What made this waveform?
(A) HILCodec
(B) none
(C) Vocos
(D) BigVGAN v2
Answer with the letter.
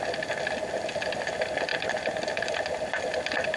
B